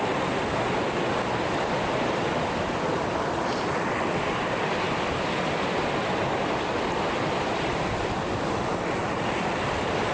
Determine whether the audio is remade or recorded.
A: recorded